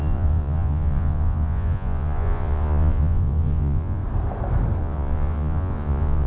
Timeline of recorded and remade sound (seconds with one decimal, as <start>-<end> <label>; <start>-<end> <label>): 0.0-4.0 remade; 4.0-4.8 recorded; 4.8-6.3 remade